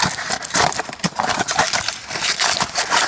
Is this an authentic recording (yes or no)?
yes